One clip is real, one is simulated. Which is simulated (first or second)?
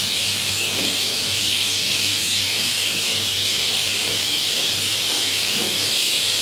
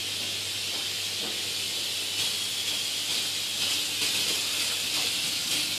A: first